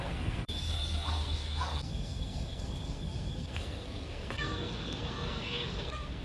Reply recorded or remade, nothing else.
remade